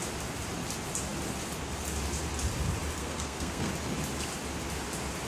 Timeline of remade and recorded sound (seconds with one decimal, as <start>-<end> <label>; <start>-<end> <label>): 0.0-3.0 recorded; 3.0-3.7 remade; 3.7-5.3 recorded